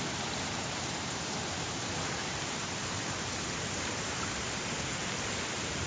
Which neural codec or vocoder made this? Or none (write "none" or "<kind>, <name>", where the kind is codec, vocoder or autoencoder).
vocoder, BigVGAN v2